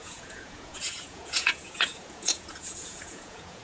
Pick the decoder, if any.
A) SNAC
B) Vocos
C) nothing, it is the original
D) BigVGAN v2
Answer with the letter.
B